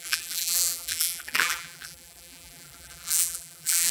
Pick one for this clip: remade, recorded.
remade